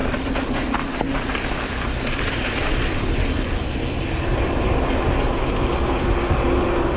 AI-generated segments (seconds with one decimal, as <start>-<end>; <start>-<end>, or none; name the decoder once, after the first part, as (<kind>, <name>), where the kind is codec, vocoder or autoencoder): 2.2-2.6 (vocoder, BigVGAN v2)